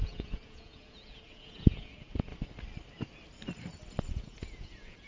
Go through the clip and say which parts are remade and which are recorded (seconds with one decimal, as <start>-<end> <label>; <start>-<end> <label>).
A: 0.0-2.3 remade; 2.3-4.1 recorded; 4.1-5.1 remade